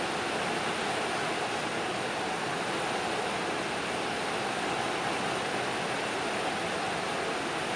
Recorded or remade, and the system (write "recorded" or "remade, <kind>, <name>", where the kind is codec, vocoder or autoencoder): recorded